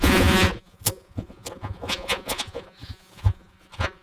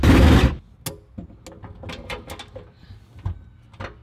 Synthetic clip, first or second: first